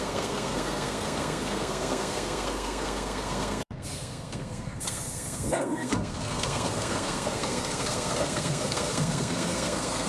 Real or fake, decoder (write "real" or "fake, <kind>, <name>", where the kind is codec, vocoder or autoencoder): fake, codec, SNAC